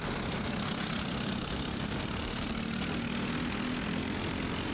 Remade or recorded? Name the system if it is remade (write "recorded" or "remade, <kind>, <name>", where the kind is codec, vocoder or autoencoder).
recorded